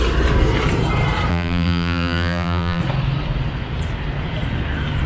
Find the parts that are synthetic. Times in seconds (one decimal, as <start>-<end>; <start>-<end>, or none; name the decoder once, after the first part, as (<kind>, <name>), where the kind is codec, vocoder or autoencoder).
1.3-2.8 (vocoder, BigVGAN v2)